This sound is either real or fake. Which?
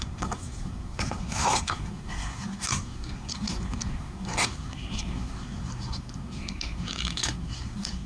fake